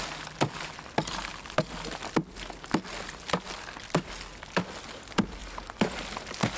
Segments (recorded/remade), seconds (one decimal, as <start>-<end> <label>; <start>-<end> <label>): 0.0-5.4 recorded; 5.4-6.0 remade; 6.0-6.6 recorded

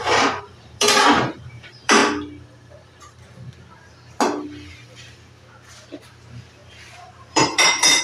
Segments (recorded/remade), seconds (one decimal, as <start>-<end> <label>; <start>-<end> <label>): 0.0-2.0 remade; 2.0-6.1 recorded; 6.1-8.0 remade

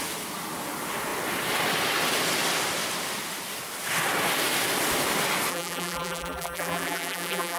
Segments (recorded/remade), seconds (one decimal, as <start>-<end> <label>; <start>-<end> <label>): 0.0-5.5 recorded; 5.5-7.6 remade

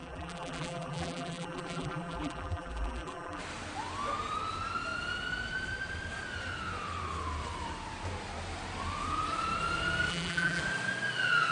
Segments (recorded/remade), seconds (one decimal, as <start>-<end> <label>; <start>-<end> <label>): 0.0-3.4 remade; 3.4-10.1 recorded; 10.1-10.6 remade; 10.6-11.5 recorded

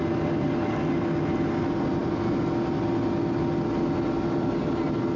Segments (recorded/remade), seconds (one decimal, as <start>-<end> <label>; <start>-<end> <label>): 0.0-5.2 recorded